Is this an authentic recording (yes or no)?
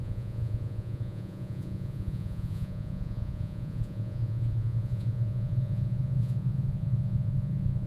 no